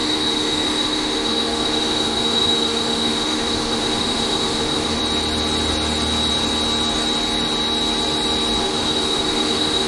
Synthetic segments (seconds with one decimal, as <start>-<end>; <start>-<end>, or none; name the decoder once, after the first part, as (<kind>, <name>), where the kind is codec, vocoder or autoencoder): 0.0-5.0 (autoencoder, DAC-VAE); 8.6-9.9